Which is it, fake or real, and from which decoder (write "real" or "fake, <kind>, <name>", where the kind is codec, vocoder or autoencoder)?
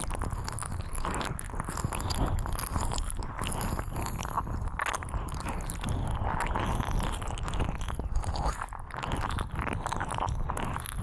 real